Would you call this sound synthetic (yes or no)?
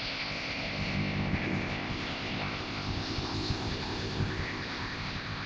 yes